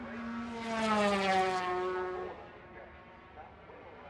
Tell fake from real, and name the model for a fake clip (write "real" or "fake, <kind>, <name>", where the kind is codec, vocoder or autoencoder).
real